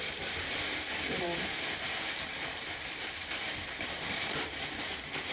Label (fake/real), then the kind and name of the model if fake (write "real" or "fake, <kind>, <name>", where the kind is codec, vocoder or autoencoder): fake, vocoder, BigVGAN v2